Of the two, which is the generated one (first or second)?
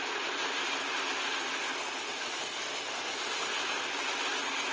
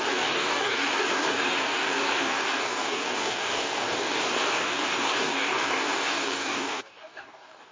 second